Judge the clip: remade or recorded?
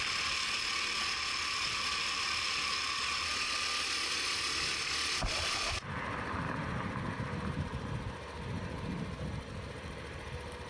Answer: recorded